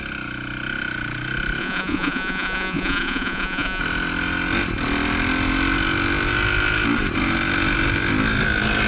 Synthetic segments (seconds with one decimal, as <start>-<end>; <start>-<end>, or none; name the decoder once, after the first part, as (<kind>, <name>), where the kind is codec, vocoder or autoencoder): 1.6-3.8 (vocoder, Vocos)